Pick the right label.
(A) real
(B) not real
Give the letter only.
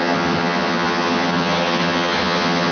B